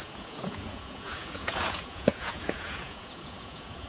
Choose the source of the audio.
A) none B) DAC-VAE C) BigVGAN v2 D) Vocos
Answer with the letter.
D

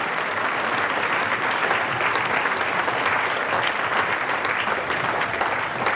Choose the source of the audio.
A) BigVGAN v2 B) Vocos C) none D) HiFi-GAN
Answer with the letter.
C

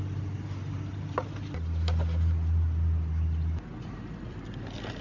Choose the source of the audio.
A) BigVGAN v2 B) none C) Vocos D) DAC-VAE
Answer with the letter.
B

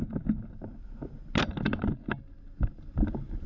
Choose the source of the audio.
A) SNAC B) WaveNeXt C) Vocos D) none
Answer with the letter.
D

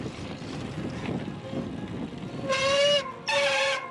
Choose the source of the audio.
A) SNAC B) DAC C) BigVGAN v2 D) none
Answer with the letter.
D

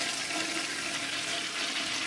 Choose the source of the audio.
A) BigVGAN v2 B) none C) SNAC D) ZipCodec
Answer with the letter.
B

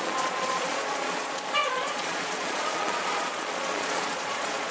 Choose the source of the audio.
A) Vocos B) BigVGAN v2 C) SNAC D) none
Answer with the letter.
A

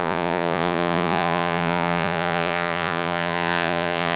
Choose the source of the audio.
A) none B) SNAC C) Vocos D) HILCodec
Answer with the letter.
C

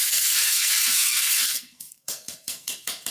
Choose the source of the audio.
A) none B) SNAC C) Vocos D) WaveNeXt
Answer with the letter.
B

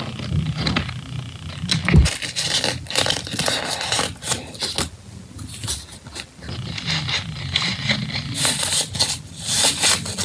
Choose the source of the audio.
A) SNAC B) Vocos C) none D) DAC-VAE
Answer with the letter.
C